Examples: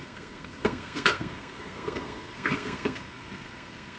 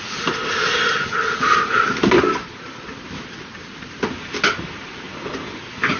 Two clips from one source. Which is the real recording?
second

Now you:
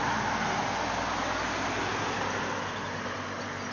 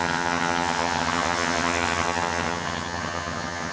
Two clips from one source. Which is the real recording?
first